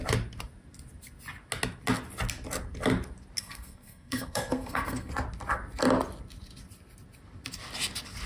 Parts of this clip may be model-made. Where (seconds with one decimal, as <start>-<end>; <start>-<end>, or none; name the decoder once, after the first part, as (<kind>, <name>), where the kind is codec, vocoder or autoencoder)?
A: 3.4-5.1 (codec, SNAC)